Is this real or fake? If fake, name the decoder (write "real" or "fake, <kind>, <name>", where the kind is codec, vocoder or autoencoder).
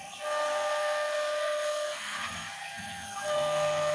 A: fake, codec, SNAC